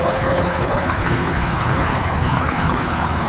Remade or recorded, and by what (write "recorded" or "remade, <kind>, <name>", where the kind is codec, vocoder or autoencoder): remade, codec, HILCodec